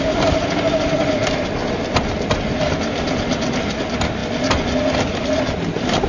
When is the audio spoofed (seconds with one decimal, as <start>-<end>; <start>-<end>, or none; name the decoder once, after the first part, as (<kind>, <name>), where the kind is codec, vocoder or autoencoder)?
none